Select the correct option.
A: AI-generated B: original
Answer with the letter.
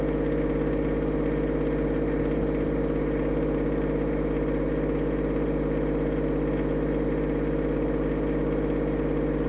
B